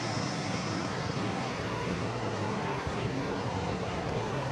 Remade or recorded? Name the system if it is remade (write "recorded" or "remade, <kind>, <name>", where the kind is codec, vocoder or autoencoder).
remade, codec, SNAC